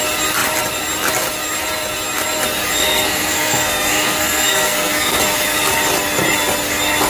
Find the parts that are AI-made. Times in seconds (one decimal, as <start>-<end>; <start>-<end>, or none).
2.8-5.2